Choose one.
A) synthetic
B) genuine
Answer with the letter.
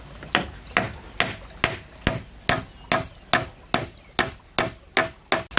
B